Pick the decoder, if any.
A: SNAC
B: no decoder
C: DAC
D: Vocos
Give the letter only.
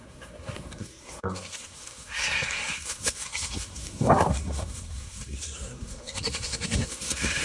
A